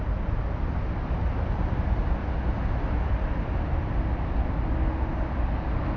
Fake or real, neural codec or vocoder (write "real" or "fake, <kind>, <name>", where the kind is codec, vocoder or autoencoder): real